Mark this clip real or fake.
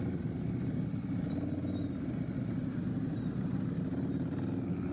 real